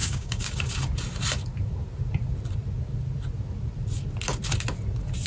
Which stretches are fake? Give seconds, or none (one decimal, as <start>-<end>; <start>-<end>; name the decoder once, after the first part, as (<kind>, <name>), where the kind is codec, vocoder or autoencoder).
0.0-0.5 (codec, DAC)